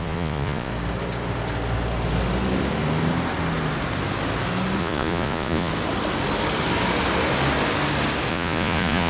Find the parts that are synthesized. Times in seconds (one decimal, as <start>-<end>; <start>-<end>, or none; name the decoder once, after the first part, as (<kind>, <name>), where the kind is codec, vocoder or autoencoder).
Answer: 0.0-0.7 (vocoder, Vocos); 4.8-5.7; 8.3-9.1